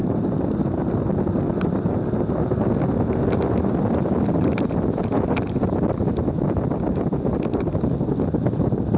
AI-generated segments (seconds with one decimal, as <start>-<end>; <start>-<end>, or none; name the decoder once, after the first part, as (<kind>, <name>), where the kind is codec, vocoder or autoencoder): none